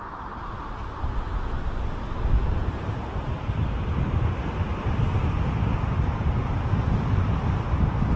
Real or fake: real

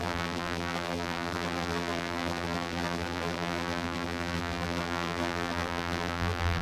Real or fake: fake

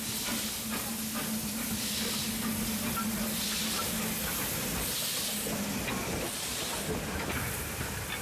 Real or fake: real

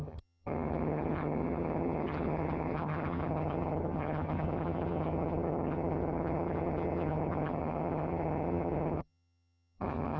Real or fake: fake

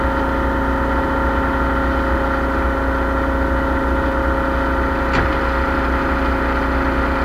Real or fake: real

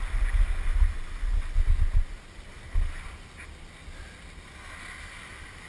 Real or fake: real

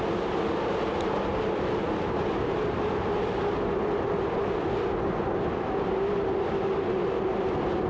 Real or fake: real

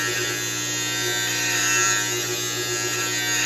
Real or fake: real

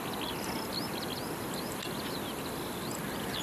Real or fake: real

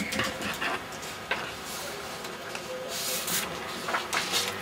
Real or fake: real